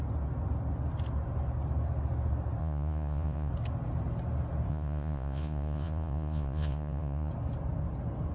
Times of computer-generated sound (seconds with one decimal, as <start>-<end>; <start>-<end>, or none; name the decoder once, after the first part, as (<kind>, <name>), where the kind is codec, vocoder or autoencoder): 2.6-3.5 (vocoder, Vocos); 4.7-7.3